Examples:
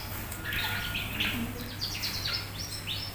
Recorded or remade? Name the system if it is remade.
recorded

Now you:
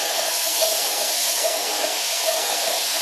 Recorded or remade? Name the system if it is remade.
remade, codec, SNAC